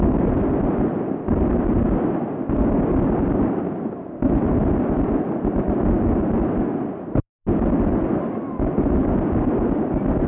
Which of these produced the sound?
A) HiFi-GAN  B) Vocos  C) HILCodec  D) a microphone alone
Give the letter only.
D